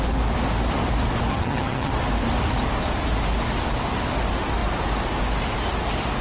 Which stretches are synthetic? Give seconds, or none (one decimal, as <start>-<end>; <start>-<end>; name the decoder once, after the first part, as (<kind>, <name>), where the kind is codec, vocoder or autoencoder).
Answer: 1.3-1.9 (vocoder, HiFi-GAN)